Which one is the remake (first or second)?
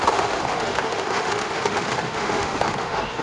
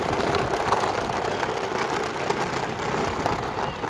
first